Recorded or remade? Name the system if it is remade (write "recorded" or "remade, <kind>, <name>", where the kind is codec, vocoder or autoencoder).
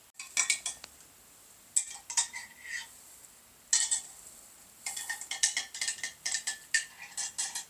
recorded